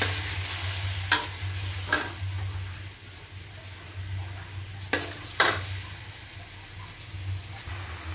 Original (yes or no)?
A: yes